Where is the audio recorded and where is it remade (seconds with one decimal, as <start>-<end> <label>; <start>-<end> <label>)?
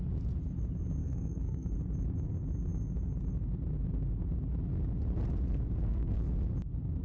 0.0-1.0 recorded; 1.0-1.7 remade; 1.7-5.8 recorded; 5.8-6.3 remade; 6.3-7.0 recorded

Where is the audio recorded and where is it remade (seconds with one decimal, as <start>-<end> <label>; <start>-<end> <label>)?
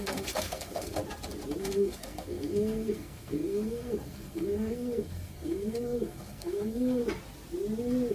0.0-1.0 remade; 1.0-1.6 recorded; 1.6-7.0 remade; 7.0-8.1 recorded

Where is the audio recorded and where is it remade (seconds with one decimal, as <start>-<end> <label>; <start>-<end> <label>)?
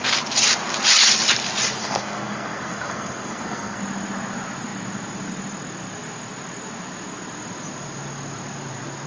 0.0-1.8 recorded; 1.8-3.8 remade; 3.8-9.1 recorded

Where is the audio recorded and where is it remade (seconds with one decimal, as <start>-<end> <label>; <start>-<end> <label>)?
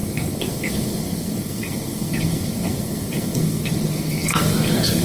0.0-5.0 remade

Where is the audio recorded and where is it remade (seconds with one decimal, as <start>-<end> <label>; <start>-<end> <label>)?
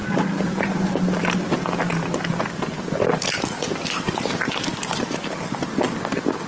0.0-6.5 recorded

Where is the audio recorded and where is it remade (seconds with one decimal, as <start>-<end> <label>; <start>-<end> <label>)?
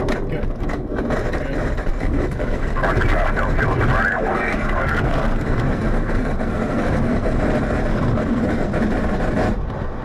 0.0-0.4 recorded; 0.4-1.0 remade; 1.0-1.9 recorded; 1.9-2.8 remade; 2.8-4.1 recorded; 4.1-7.4 remade; 7.4-7.9 recorded; 7.9-8.7 remade; 8.7-10.0 recorded